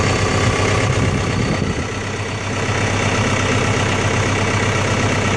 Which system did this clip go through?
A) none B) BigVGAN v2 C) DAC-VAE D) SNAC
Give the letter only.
A